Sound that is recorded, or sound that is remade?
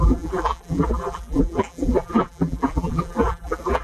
remade